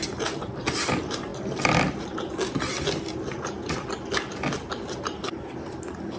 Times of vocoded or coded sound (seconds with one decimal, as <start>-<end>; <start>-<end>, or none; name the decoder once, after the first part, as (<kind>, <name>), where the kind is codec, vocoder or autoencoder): none